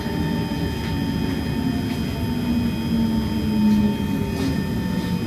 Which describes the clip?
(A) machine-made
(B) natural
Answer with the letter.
B